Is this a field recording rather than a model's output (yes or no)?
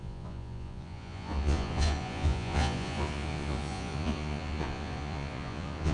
no